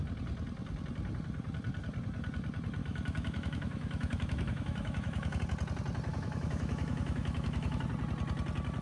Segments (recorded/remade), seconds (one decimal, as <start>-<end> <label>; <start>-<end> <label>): 0.0-2.8 recorded; 2.8-5.4 remade; 5.4-6.1 recorded; 6.1-7.8 remade; 7.8-8.8 recorded

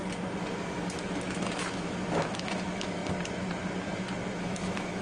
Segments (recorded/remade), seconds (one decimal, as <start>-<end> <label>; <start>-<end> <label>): 0.0-0.6 recorded; 0.6-3.0 remade; 3.0-4.4 recorded; 4.4-5.0 remade

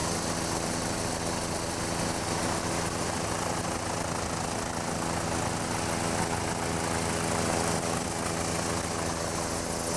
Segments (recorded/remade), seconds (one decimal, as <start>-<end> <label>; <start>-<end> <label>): 0.0-10.0 recorded

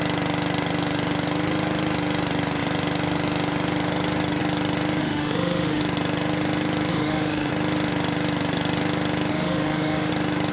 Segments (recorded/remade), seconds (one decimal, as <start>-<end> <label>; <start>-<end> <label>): 0.0-5.0 recorded; 5.0-5.8 remade; 5.8-6.9 recorded; 6.9-7.5 remade; 7.5-9.3 recorded; 9.3-10.1 remade; 10.1-10.5 recorded